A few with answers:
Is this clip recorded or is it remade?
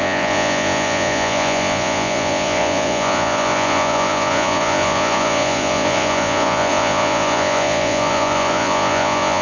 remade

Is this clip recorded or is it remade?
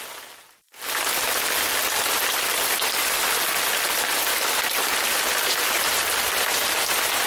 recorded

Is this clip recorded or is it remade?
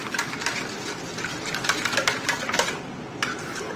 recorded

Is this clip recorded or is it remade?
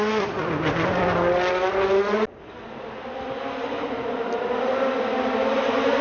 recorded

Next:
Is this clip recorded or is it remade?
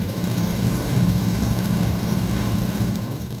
remade